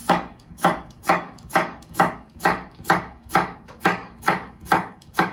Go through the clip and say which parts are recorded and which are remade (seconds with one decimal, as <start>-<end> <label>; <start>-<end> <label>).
0.0-5.3 remade